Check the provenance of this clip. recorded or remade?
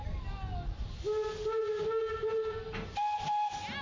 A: recorded